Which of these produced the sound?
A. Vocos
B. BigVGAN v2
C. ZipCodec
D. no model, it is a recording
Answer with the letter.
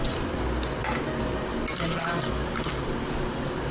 D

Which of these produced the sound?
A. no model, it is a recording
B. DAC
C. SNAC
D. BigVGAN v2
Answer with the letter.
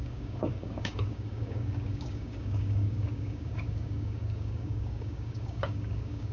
B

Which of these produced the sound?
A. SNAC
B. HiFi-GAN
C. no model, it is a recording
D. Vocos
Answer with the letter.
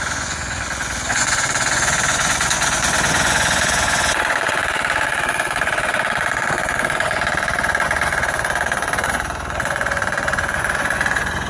D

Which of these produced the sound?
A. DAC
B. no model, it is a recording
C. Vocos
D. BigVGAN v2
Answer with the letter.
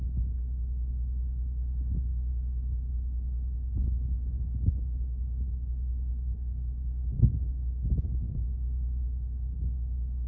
B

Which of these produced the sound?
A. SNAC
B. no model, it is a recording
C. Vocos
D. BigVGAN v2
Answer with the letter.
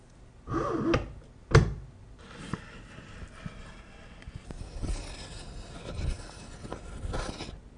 B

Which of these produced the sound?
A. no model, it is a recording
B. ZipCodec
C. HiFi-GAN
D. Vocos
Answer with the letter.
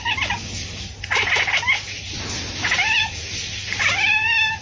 A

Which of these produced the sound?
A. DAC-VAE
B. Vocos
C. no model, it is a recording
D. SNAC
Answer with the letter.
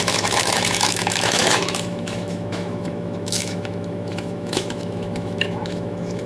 A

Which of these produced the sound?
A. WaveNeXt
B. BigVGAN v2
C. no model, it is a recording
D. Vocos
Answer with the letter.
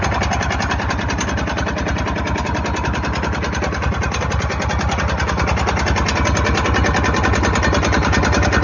C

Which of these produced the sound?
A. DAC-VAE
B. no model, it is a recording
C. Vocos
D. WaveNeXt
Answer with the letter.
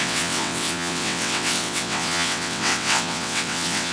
D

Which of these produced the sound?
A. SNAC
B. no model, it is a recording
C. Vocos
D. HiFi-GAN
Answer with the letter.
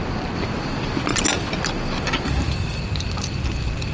B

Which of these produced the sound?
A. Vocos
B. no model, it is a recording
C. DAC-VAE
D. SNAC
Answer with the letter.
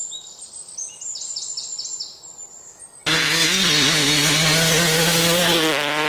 B